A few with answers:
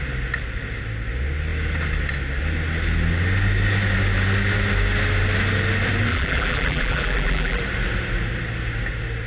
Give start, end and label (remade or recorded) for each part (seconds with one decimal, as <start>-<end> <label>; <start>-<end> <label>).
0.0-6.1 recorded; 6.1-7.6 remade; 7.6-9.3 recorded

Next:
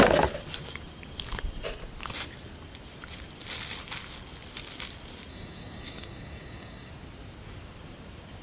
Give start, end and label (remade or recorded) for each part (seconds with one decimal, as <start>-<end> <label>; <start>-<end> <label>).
0.0-5.3 recorded; 5.3-6.9 remade; 6.9-8.4 recorded

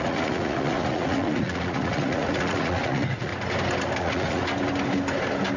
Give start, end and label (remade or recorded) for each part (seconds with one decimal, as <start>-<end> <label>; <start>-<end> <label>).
0.0-3.3 remade; 3.3-4.0 recorded; 4.0-4.4 remade; 4.4-5.6 recorded

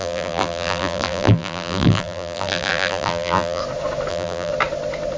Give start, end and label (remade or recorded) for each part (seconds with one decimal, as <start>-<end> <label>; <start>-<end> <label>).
0.0-3.6 remade; 3.6-4.1 recorded; 4.1-4.5 remade; 4.5-5.2 recorded

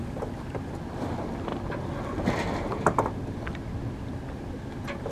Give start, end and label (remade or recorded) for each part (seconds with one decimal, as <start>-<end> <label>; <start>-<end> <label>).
0.0-5.1 recorded

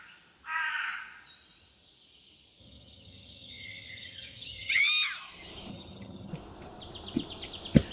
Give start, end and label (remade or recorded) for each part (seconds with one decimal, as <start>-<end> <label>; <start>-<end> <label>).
0.0-2.6 recorded; 2.6-4.8 remade; 4.8-5.7 recorded; 5.7-6.3 remade; 6.3-7.9 recorded

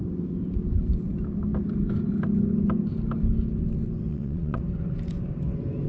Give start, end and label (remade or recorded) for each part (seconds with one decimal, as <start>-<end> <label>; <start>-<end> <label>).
0.0-4.1 recorded; 4.1-4.6 remade; 4.6-5.9 recorded

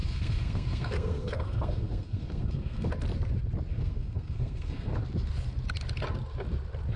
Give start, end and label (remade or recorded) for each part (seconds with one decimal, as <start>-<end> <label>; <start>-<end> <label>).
0.0-2.9 remade; 2.9-3.7 recorded; 3.7-4.9 remade; 4.9-7.0 recorded